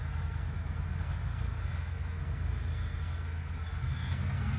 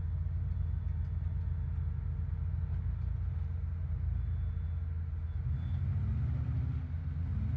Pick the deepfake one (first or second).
first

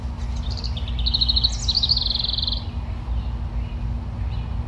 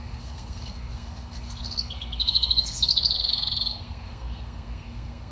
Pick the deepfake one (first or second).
second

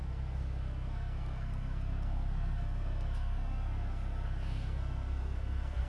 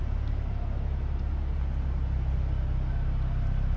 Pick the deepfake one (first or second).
first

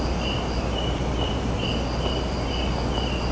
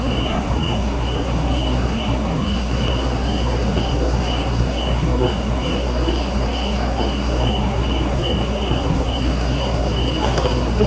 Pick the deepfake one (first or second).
second